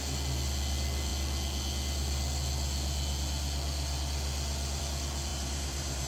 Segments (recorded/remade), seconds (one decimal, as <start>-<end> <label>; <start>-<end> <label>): 0.0-5.3 recorded; 5.3-6.1 remade